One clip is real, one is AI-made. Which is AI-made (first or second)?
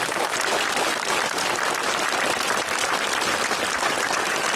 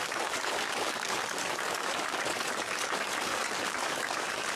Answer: second